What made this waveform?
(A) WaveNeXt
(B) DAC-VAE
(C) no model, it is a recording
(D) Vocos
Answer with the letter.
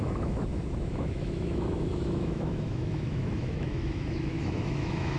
B